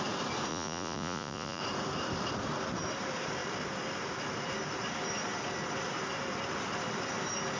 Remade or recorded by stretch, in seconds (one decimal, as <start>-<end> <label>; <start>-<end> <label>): 0.0-0.5 recorded; 0.5-1.6 remade; 1.6-7.6 recorded

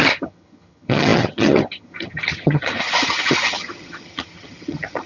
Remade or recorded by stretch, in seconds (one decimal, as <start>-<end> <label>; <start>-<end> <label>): 0.0-5.1 remade

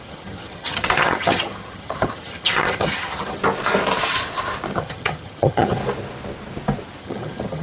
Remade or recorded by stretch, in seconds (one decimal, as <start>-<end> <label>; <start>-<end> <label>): 0.0-3.4 remade; 3.4-4.7 recorded; 4.7-5.8 remade; 5.8-7.0 recorded; 7.0-7.6 remade